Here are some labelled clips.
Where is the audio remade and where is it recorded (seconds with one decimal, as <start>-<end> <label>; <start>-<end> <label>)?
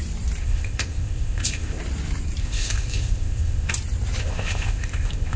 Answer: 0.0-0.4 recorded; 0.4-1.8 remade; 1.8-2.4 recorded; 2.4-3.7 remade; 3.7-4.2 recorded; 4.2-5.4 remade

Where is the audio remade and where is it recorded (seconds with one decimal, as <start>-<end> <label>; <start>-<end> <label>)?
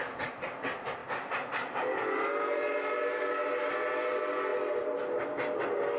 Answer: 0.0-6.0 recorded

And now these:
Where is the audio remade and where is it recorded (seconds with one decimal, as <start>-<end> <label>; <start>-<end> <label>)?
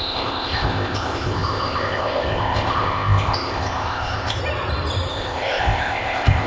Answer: 0.0-4.4 remade; 4.4-5.1 recorded; 5.1-6.5 remade